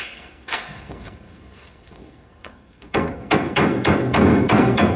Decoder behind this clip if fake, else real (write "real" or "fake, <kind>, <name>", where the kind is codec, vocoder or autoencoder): fake, codec, SNAC